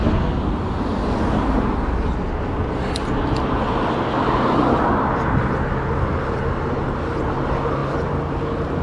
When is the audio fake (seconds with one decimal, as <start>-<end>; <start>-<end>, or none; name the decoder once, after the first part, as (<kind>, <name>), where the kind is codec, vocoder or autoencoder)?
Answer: none